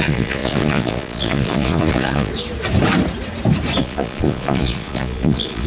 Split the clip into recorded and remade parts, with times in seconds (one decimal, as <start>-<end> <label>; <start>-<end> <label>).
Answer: 0.0-2.3 remade; 2.3-3.8 recorded; 3.8-5.7 remade